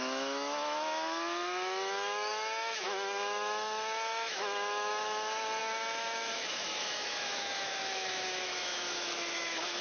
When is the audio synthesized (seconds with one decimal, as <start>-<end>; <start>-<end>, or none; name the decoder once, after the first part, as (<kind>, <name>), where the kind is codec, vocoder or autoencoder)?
0.0-9.8 (autoencoder, DAC-VAE)